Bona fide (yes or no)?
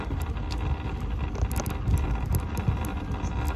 yes